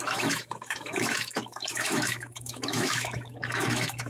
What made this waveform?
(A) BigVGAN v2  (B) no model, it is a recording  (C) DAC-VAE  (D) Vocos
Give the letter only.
C